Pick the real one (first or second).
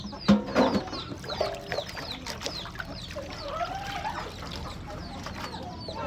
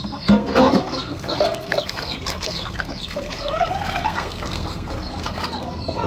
first